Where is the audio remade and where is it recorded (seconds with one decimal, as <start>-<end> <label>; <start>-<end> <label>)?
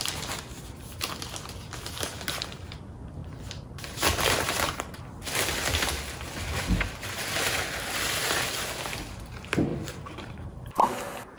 0.0-3.2 recorded; 3.2-5.0 remade; 5.0-9.7 recorded; 9.7-10.8 remade; 10.8-11.4 recorded